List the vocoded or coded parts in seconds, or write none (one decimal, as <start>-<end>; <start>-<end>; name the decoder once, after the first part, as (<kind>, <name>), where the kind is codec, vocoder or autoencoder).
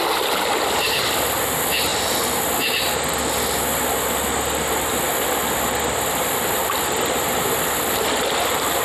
none